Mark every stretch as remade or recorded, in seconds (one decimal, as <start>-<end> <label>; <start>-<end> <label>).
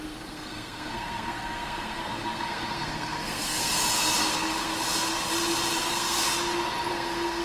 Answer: 0.0-3.8 remade; 3.8-4.3 recorded; 4.3-4.7 remade; 4.7-5.8 recorded; 5.8-6.2 remade; 6.2-6.9 recorded; 6.9-7.4 remade